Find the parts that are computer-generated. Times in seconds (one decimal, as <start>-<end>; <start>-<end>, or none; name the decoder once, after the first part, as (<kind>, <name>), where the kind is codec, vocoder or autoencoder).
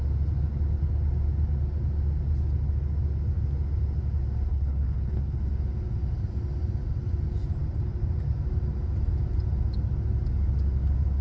4.5-5.5 (codec, HILCodec)